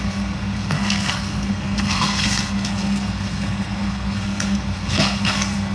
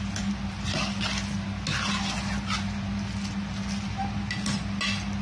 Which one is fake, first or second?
first